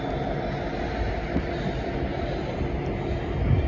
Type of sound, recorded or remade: recorded